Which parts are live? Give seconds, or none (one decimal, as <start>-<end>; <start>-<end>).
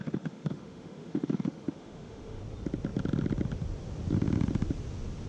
2.4-5.3